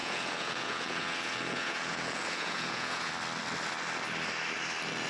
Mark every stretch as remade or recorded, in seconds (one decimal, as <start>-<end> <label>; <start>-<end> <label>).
0.0-3.1 remade; 3.1-5.1 recorded